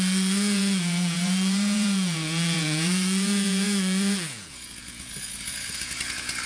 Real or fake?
fake